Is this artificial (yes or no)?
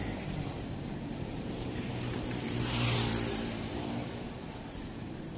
yes